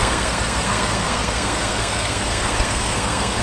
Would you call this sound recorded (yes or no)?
no